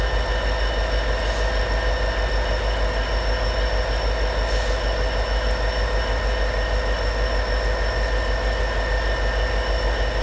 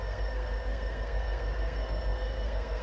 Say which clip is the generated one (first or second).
second